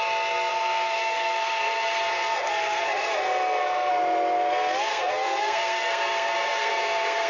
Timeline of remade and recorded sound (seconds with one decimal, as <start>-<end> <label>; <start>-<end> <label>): 0.0-0.5 recorded; 0.5-3.9 remade; 3.9-4.9 recorded; 4.9-7.3 remade